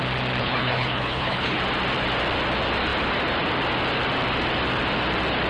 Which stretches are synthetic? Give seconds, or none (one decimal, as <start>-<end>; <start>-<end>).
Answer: 0.4-1.6